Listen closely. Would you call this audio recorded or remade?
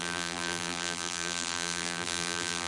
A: remade